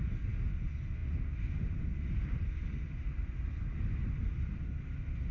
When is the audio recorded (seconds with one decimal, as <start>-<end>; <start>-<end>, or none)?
0.0-5.3